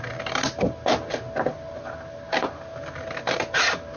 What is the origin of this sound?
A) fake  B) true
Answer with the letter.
B